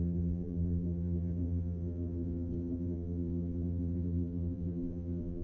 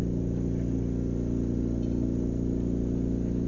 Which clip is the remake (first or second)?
first